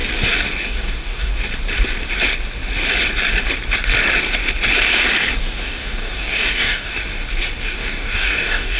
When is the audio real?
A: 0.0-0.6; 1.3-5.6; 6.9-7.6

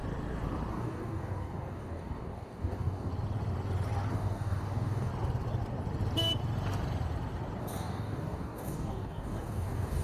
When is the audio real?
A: 0.0-0.7; 3.1-4.1; 5.1-7.6

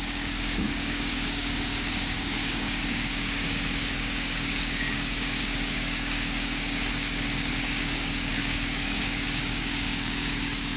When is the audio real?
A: none

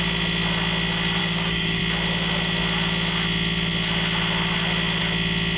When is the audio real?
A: 0.0-1.2; 1.8-5.6

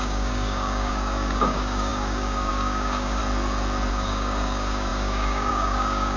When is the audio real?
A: 3.2-3.9

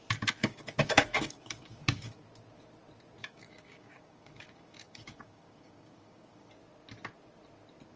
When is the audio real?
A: 0.0-0.4; 2.2-3.2; 6.5-8.0